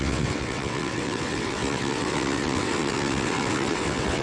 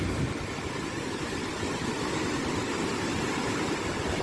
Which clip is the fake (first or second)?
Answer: first